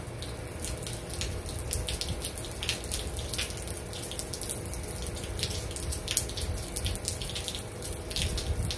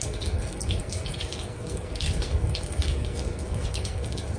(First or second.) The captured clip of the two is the first